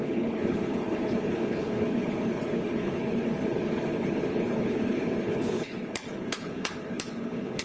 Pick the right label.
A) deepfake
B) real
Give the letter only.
A